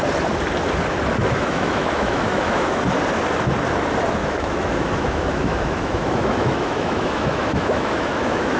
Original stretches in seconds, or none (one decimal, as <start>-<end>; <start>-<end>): 0.0-1.2; 2.8-4.2